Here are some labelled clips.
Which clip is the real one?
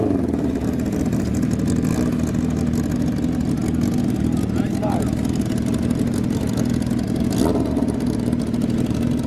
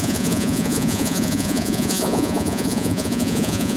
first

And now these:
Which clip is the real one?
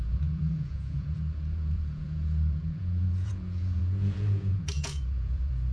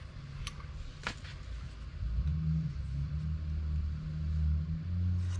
second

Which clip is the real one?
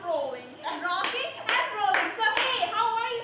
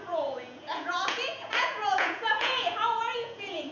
first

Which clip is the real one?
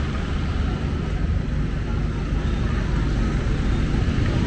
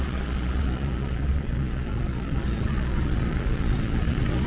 first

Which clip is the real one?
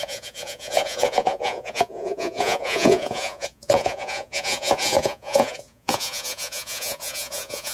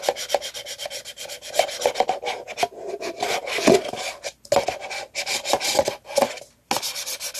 second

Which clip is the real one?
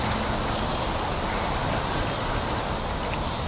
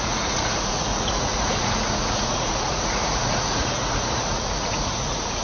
first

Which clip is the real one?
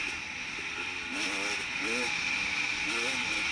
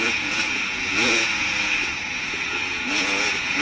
first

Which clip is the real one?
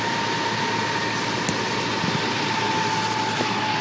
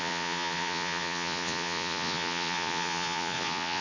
first